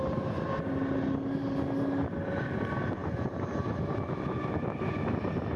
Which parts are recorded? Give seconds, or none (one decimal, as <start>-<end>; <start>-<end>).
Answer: 0.0-5.6